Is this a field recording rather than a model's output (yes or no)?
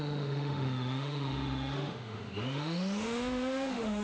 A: no